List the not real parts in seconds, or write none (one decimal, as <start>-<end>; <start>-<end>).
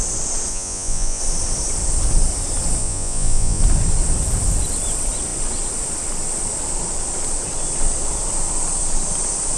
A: 0.5-1.2; 2.8-3.6